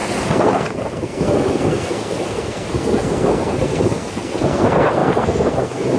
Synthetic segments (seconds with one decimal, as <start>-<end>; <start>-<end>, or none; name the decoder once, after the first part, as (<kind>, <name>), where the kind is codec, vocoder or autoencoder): 0.0-6.0 (codec, SNAC)